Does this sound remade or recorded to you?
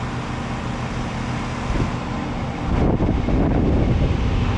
recorded